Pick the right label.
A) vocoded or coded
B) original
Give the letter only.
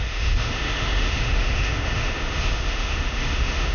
A